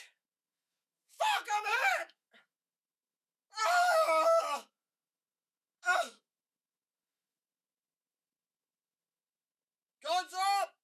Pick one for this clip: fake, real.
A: fake